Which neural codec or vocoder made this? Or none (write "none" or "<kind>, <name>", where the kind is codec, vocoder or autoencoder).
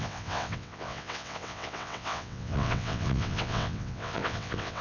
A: vocoder, WaveNeXt